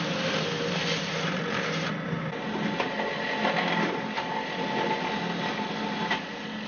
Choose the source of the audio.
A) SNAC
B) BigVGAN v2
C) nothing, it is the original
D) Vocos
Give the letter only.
C